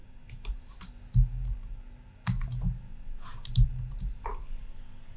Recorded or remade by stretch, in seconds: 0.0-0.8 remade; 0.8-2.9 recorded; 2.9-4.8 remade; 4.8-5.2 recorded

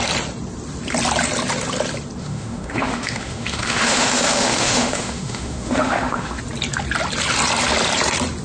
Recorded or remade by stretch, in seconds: 0.0-2.2 recorded; 2.2-6.4 remade; 6.4-8.4 recorded

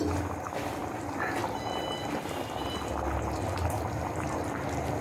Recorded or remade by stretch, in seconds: 0.0-5.0 recorded